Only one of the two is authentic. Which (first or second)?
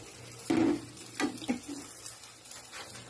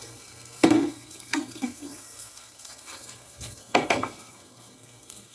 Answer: first